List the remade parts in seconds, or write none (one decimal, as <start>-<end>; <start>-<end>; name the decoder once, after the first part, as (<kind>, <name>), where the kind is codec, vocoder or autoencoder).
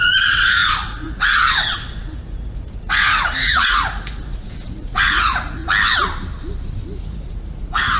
0.0-5.6 (vocoder, Vocos); 7.0-8.0